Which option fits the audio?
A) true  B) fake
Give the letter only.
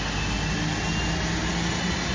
A